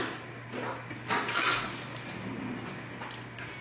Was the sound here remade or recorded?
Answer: recorded